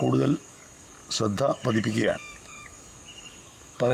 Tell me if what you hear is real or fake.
fake